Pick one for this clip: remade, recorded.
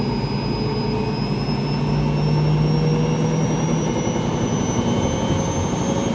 recorded